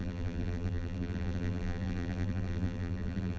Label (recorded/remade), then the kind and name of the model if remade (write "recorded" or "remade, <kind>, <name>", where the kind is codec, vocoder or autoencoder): remade, vocoder, BigVGAN v2